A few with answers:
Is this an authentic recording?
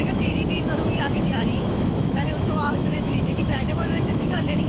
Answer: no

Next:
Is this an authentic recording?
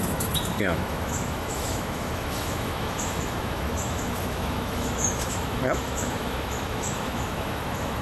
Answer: no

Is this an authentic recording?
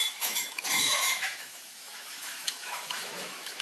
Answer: no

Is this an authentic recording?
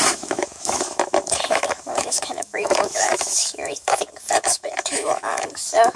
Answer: no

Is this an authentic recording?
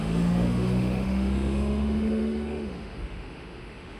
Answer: no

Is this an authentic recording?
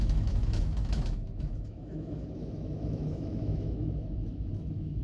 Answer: no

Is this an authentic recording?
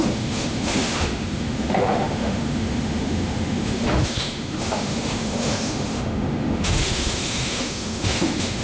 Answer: no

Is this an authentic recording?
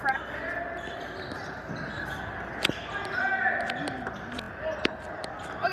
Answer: yes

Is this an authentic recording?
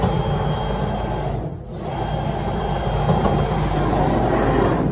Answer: yes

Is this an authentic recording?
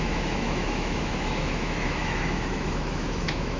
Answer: no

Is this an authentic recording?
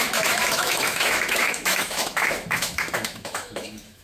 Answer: no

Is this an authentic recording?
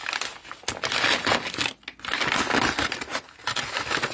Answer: yes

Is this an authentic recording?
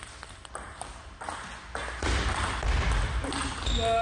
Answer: yes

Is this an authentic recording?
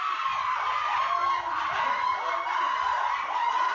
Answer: yes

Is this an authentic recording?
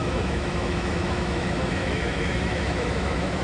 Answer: no